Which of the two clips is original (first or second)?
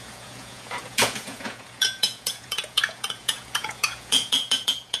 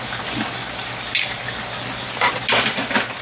second